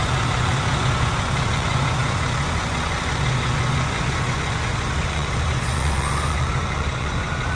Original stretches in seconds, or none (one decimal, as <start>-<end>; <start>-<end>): none